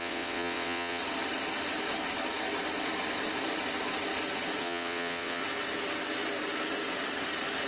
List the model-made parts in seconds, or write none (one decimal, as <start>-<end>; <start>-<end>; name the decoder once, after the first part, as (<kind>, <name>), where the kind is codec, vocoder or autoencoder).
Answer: 0.0-1.0 (vocoder, WaveNeXt); 4.6-5.4